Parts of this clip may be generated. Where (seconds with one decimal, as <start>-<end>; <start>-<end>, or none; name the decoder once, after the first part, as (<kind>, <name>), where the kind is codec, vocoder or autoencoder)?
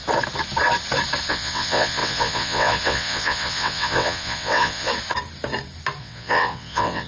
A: 1.3-4.9 (vocoder, WaveNeXt); 6.0-7.1